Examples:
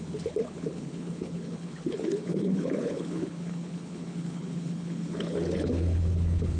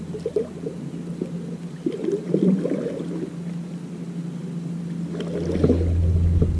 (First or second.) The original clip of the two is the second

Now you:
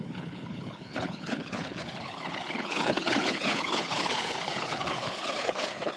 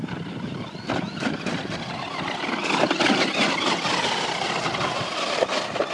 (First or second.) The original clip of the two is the second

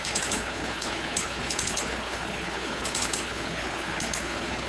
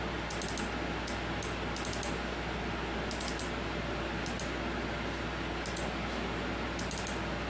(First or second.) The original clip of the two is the second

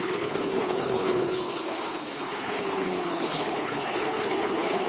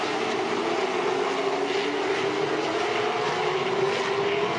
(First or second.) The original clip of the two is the second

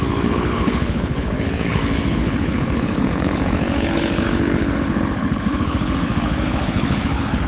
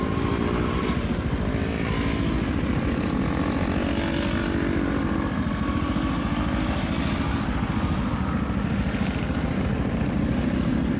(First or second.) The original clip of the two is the second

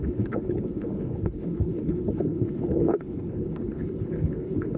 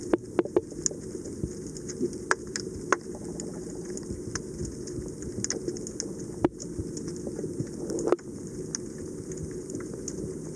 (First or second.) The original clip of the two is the second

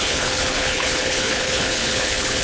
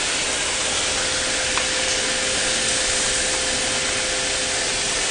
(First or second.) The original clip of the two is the second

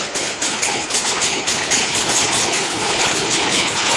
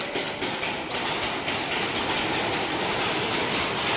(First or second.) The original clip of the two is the second